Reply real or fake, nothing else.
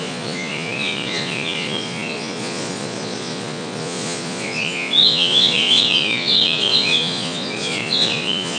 fake